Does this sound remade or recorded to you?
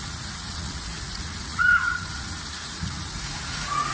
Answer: remade